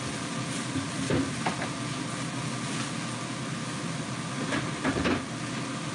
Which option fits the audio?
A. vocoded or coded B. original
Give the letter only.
B